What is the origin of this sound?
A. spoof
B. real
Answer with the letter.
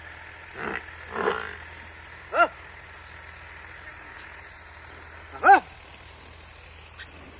B